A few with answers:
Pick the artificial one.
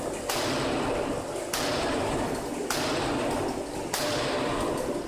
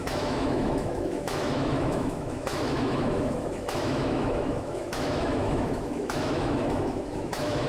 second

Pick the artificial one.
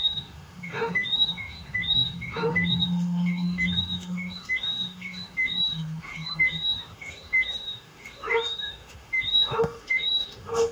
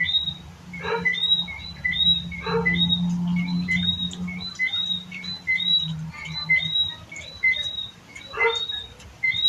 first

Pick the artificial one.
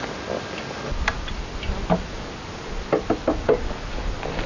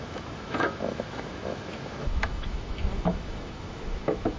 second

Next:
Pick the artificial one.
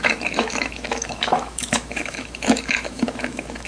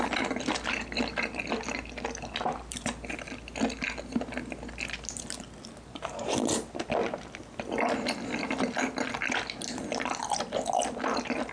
first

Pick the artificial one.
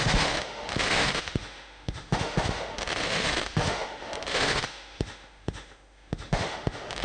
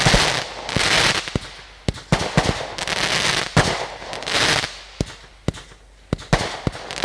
first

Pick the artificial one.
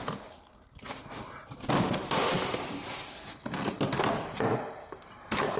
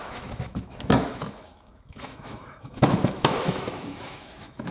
second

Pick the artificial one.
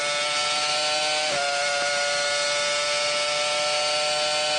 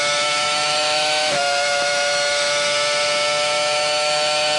second